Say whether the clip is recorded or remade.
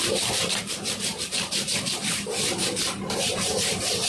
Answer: remade